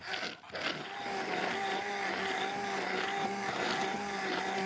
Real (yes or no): yes